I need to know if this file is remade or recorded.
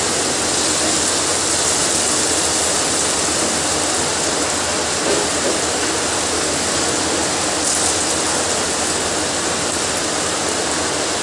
recorded